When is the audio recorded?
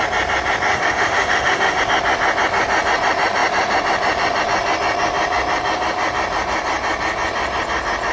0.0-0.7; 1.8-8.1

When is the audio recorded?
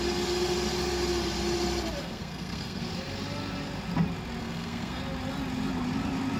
0.0-2.0; 2.9-4.4; 5.0-6.4